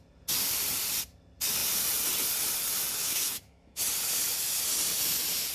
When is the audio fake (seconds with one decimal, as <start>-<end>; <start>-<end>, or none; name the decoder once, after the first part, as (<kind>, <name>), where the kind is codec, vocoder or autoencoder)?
3.0-3.8 (autoencoder, DAC-VAE)